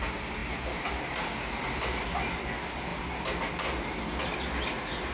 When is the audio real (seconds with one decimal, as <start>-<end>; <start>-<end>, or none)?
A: 0.0-5.1